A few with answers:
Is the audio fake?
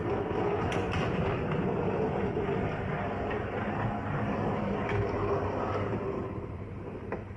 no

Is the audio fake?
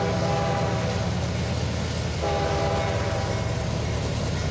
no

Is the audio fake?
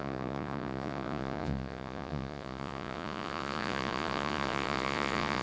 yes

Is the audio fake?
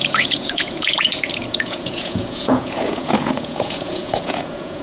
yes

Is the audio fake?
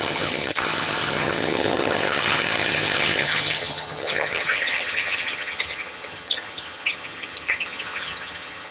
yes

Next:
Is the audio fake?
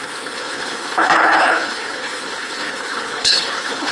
yes